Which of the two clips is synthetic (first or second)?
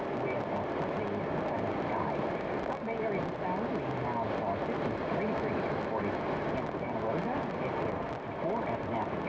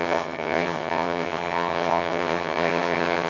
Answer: second